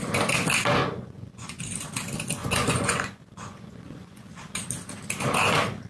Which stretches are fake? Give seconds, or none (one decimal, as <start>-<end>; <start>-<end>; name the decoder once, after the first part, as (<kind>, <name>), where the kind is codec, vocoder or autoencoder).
0.8-1.6 (vocoder, Vocos); 2.4-4.3